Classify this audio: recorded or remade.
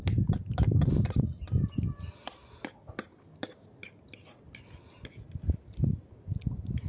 recorded